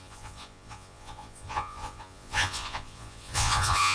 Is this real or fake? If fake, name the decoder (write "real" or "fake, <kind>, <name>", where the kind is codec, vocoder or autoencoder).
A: fake, vocoder, Vocos